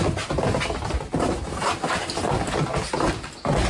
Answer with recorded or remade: recorded